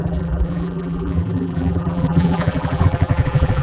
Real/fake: fake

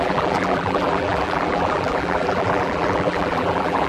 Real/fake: fake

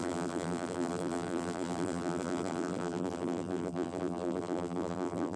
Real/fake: fake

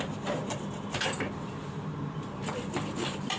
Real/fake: fake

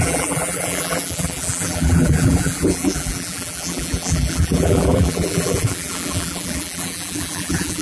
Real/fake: fake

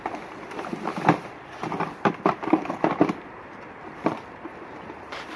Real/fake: fake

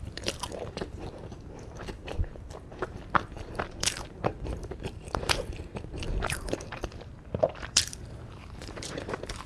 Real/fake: fake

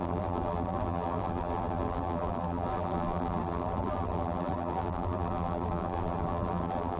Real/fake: fake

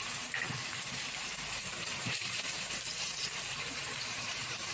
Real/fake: fake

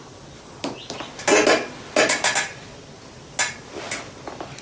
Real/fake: real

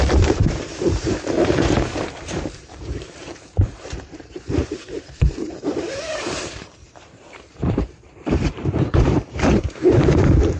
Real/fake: fake